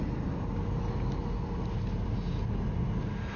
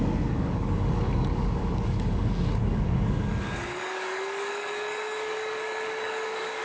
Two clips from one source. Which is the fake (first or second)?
second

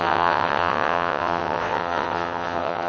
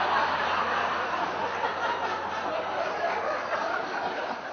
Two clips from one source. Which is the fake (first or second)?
first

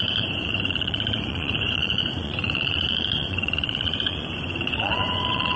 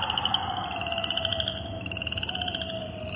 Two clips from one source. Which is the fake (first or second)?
first